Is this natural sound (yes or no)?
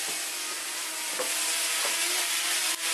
yes